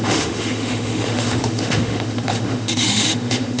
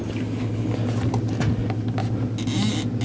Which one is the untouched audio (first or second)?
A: second